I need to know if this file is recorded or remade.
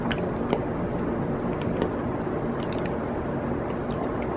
recorded